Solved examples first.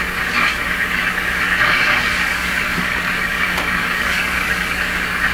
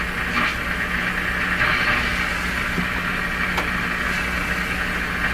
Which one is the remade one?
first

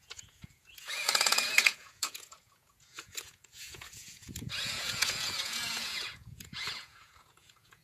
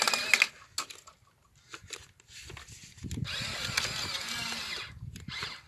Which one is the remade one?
first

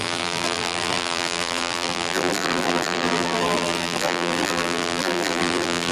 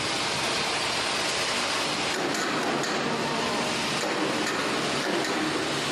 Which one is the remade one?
first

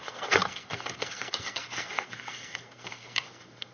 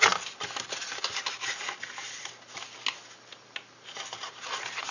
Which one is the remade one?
first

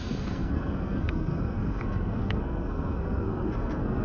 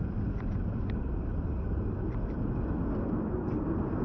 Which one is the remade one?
first